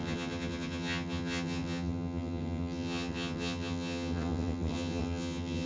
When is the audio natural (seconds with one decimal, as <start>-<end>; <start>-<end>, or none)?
none

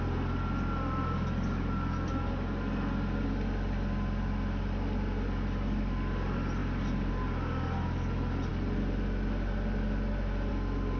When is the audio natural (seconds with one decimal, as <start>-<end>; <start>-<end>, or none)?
0.0-11.0

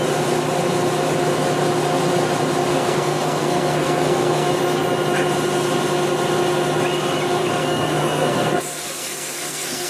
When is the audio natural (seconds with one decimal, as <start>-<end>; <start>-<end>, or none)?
0.0-2.7; 4.5-7.4